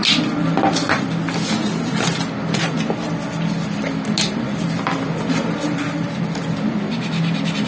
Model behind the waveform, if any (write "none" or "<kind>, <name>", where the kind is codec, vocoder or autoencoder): none